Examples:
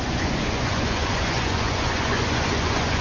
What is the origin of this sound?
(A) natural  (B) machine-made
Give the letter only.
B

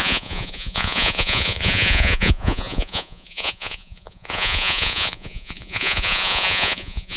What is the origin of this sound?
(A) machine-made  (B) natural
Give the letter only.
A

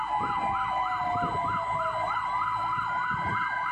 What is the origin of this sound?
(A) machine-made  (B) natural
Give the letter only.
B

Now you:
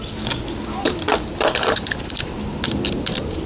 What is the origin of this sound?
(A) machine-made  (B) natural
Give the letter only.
B